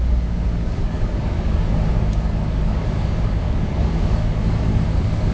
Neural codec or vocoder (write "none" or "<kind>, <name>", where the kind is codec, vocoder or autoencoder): codec, DAC